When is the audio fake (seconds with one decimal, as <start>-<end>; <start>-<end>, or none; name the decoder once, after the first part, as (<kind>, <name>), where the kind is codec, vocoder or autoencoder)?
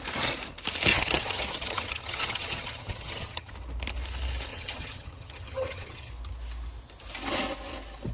0.9-3.5 (vocoder, HiFi-GAN); 4.5-6.1